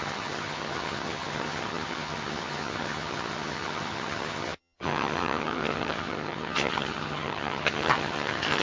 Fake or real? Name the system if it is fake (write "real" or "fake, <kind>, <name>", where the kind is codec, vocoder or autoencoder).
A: fake, vocoder, HiFi-GAN